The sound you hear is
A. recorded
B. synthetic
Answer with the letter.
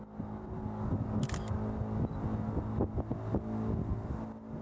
A